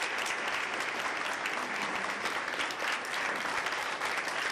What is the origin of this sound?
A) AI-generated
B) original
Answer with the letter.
B